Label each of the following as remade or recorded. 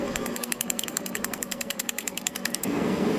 remade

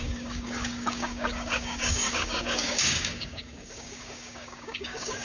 remade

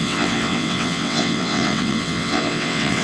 remade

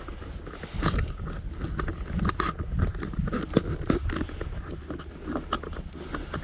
recorded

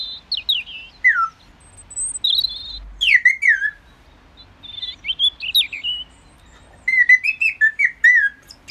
recorded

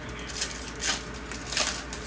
recorded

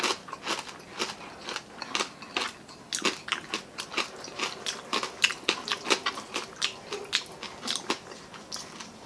recorded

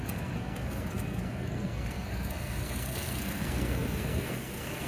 remade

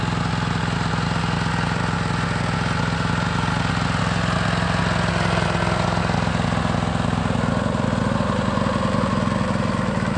recorded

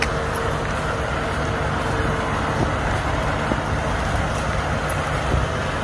recorded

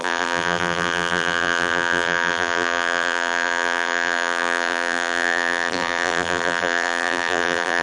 remade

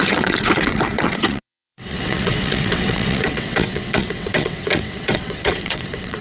remade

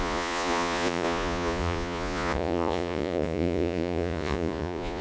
remade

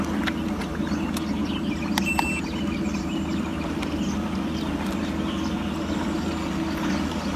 recorded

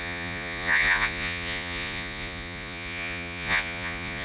remade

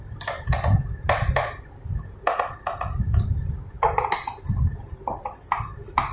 recorded